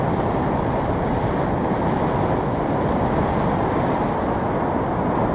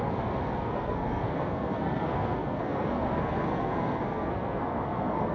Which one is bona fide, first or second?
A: first